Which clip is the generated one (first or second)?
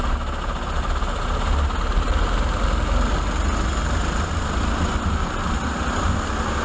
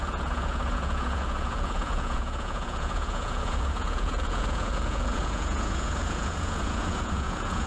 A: second